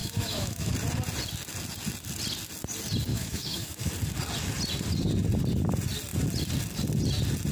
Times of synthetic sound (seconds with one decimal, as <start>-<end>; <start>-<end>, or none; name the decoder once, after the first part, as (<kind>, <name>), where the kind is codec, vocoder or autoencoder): 0.0-0.7 (autoencoder, DAC-VAE); 3.1-3.9